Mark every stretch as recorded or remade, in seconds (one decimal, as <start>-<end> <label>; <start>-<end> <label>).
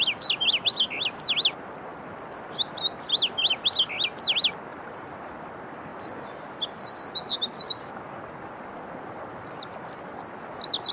0.0-4.7 recorded; 4.7-5.3 remade; 5.3-10.9 recorded